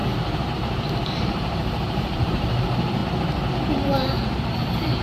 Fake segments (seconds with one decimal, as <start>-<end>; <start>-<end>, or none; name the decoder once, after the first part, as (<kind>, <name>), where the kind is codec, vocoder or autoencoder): 1.2-3.0 (vocoder, BigVGAN v2); 3.5-5.0